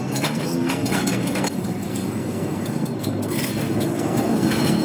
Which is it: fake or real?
fake